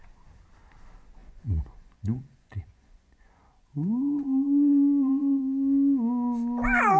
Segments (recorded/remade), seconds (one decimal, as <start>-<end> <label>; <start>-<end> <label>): 0.0-1.2 recorded; 1.2-5.4 remade; 5.4-7.0 recorded